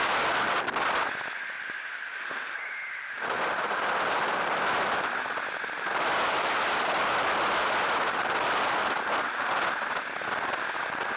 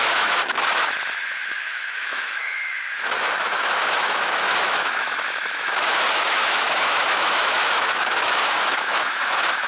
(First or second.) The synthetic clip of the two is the second